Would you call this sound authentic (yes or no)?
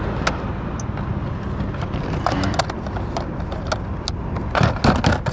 yes